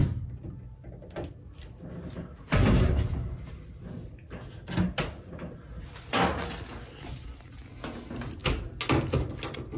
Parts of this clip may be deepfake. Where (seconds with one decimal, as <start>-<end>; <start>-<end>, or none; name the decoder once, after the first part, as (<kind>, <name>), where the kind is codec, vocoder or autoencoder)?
none